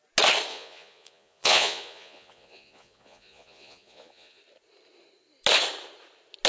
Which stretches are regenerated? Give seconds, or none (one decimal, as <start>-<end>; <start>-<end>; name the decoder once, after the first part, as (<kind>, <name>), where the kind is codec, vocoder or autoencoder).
0.5-4.4 (vocoder, Vocos)